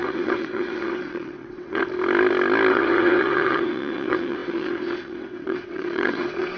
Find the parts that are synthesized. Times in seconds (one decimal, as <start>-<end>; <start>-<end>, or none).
0.0-1.8; 2.7-6.6